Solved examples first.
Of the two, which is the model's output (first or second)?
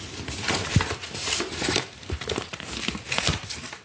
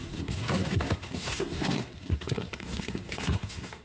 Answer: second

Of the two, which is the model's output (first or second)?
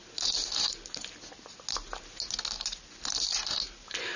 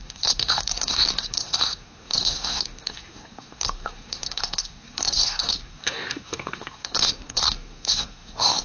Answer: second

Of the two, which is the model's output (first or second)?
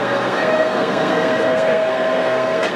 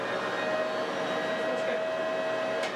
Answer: first